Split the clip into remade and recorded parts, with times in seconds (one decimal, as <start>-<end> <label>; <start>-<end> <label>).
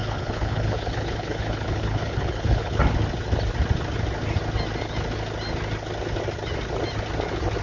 0.0-2.8 remade; 2.8-7.6 recorded